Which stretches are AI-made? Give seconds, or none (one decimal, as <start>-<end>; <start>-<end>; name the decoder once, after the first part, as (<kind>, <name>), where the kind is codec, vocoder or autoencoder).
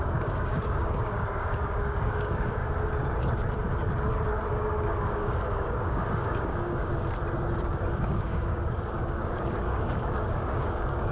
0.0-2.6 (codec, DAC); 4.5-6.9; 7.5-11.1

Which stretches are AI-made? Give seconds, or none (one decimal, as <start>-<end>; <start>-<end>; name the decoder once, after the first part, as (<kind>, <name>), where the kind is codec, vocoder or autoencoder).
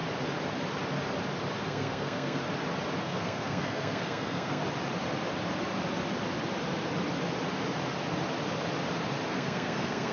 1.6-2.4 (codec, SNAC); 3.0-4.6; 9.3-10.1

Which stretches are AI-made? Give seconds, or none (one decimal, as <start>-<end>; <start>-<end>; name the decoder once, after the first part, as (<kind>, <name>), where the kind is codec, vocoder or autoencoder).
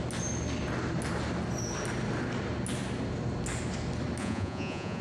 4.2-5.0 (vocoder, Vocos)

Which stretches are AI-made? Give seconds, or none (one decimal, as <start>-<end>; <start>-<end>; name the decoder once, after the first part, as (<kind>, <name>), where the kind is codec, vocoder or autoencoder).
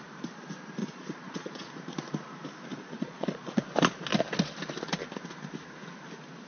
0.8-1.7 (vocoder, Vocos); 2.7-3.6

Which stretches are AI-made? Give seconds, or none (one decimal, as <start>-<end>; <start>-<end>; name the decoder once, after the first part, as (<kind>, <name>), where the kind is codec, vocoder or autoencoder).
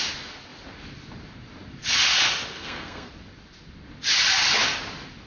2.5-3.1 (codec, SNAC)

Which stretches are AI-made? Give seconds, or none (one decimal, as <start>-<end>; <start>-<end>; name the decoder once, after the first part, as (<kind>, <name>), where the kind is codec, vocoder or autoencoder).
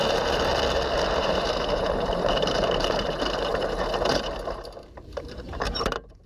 0.0-0.5 (vocoder, BigVGAN v2); 1.2-6.3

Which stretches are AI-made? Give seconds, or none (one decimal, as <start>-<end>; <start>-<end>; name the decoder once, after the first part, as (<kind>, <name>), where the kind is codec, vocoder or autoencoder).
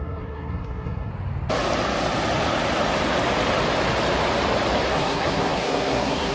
0.0-1.1 (codec, SNAC); 4.9-6.3